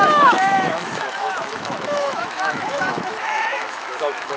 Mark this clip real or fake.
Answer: fake